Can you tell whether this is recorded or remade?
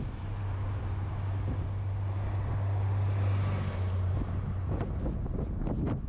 recorded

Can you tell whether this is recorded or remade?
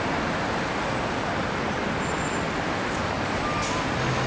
recorded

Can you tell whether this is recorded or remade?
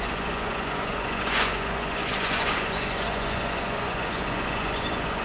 remade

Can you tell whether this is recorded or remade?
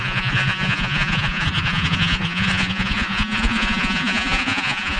remade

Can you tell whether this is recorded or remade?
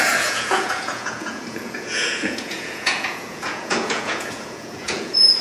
remade